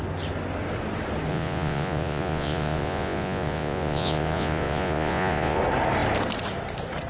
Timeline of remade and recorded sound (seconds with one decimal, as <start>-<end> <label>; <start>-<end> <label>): 0.0-1.3 recorded; 1.3-5.6 remade; 5.6-7.1 recorded